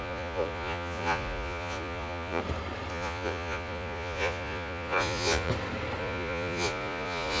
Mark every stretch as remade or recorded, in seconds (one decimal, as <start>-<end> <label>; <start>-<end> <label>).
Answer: 0.0-2.4 remade; 2.4-2.9 recorded; 2.9-5.5 remade; 5.5-6.0 recorded; 6.0-7.4 remade

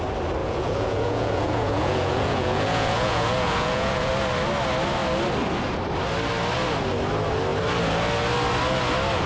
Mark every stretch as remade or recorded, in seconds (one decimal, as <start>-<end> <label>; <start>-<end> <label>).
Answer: 0.0-0.4 recorded; 0.4-4.1 remade; 4.1-9.3 recorded

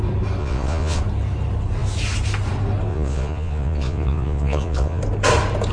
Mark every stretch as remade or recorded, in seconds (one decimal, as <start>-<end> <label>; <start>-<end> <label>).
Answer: 0.0-0.4 recorded; 0.4-1.0 remade; 1.0-2.9 recorded; 2.9-5.0 remade; 5.0-5.7 recorded

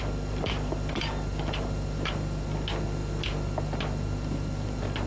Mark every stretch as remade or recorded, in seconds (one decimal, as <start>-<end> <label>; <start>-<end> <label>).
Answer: 0.0-5.1 recorded

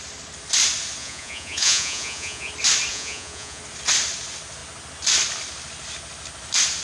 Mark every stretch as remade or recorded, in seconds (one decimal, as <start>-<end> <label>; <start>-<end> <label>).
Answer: 0.0-1.0 recorded; 1.0-2.5 remade; 2.5-2.9 recorded; 2.9-3.6 remade; 3.6-6.8 recorded

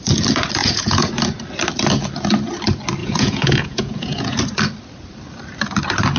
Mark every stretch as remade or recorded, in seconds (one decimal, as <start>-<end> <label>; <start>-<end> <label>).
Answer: 0.0-0.6 recorded; 0.6-1.1 remade; 1.1-3.0 recorded; 3.0-4.4 remade; 4.4-6.2 recorded

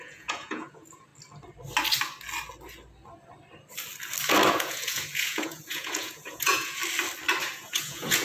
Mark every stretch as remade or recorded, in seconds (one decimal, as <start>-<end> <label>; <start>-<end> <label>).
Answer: 0.0-1.1 remade; 1.1-4.5 recorded; 4.5-6.8 remade; 6.8-7.5 recorded; 7.5-8.2 remade

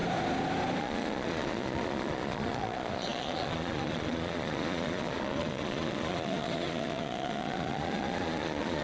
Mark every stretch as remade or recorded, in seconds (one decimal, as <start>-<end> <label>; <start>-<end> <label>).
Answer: 0.0-0.8 recorded; 0.8-8.8 remade